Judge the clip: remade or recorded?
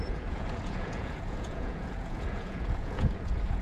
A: remade